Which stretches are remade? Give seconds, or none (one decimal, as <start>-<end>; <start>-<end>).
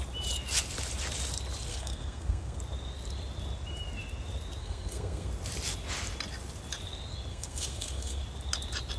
1.7-2.6; 4.6-5.3; 7.3-8.2